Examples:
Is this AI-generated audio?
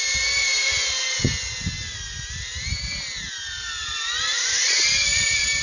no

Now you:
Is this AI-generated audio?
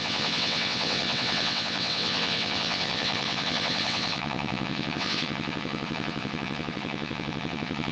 yes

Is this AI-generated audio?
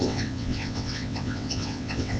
yes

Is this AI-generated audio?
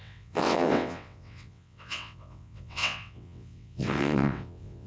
yes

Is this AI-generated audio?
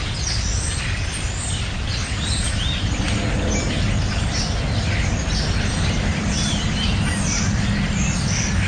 no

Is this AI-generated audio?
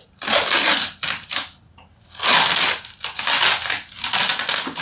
no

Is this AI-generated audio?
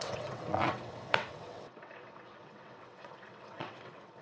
yes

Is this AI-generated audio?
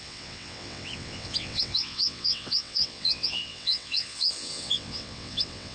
yes